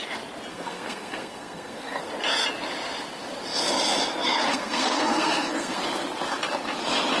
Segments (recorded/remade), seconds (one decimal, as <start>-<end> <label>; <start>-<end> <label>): 0.0-0.5 recorded; 0.5-2.1 remade; 2.1-4.5 recorded; 4.5-5.8 remade; 5.8-7.2 recorded